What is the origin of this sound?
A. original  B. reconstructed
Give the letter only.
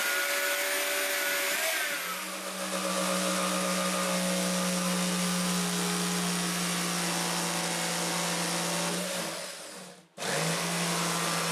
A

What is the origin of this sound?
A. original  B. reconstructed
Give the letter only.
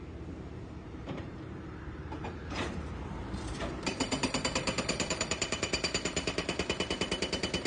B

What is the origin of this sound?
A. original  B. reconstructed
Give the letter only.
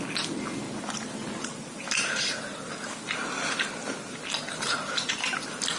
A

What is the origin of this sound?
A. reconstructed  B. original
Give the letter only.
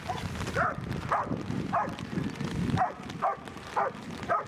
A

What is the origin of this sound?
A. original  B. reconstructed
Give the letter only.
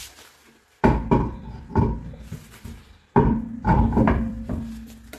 B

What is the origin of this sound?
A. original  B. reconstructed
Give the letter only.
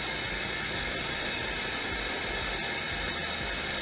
A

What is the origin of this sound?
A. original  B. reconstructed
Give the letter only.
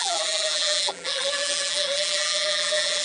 B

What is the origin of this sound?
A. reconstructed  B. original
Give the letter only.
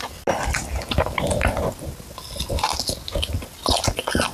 B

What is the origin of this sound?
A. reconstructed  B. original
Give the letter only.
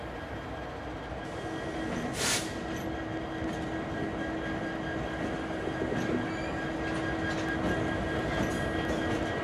B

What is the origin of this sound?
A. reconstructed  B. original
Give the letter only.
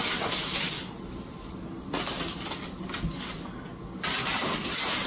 B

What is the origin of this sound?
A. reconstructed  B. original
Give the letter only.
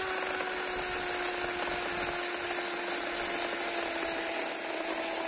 B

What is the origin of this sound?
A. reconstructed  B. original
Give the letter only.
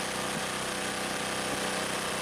B